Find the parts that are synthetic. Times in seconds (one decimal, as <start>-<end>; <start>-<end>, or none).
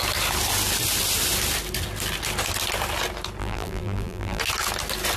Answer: 3.4-4.4